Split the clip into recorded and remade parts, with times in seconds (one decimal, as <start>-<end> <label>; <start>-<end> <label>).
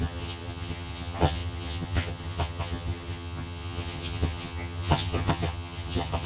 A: 0.0-6.3 remade